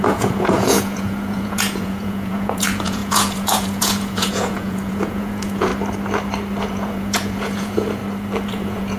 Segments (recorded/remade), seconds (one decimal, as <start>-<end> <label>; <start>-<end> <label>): 0.0-5.7 remade; 5.7-6.6 recorded; 6.6-8.0 remade; 8.0-8.5 recorded; 8.5-9.0 remade